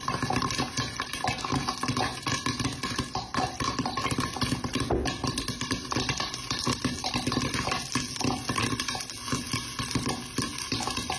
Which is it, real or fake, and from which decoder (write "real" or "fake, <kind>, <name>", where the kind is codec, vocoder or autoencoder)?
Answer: real